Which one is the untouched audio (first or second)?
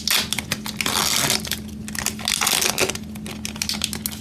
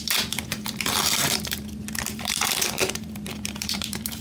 first